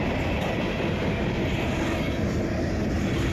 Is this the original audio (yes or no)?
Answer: yes